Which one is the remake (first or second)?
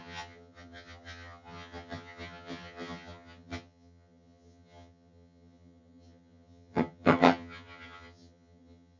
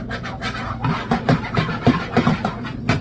first